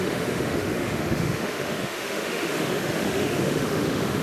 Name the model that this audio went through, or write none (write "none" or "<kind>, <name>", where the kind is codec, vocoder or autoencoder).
autoencoder, DAC-VAE